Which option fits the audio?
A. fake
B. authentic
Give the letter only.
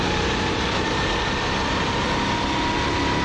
B